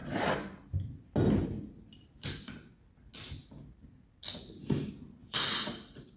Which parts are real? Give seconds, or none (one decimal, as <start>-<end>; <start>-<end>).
0.0-5.2

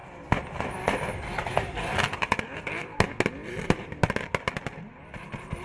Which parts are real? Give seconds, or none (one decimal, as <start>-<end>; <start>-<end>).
0.0-5.6